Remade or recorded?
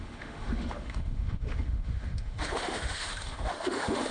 remade